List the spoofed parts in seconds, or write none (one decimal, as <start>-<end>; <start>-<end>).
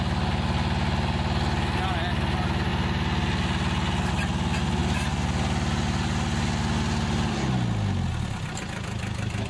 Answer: none